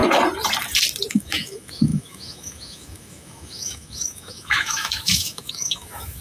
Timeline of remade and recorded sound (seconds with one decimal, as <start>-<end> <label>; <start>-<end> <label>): 0.0-1.1 recorded; 1.1-6.2 remade